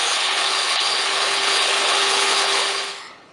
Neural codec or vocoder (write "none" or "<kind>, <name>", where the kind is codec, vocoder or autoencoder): codec, HILCodec